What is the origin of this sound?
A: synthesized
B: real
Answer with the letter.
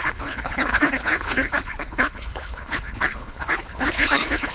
A